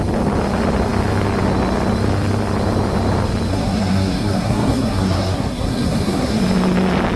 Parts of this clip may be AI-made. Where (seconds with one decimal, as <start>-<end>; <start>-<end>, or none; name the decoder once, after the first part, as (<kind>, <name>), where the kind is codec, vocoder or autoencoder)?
3.5-6.4 (codec, SNAC)